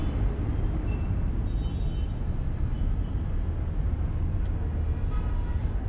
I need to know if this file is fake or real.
real